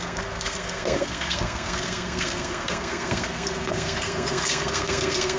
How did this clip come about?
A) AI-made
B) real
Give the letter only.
A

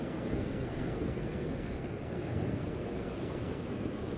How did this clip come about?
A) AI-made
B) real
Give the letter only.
A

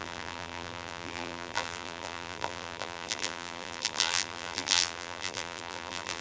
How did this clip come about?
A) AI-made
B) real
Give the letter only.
A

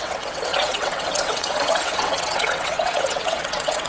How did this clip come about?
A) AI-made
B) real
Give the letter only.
A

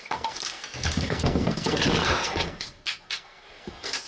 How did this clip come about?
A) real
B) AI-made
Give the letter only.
B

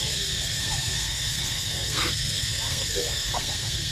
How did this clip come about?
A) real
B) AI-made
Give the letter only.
B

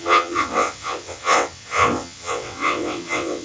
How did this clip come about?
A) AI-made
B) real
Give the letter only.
A